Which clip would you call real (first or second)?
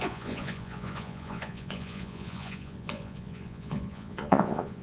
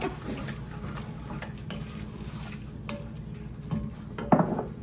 second